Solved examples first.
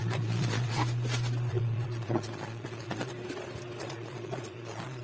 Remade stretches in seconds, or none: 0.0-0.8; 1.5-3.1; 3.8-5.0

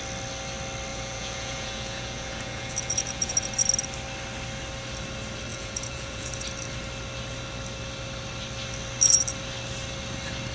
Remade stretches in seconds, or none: 0.9-3.5; 5.5-6.3

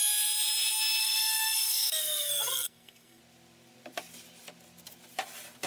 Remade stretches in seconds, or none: 1.0-3.2

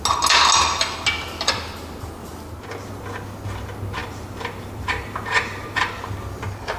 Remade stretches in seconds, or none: 4.0-6.1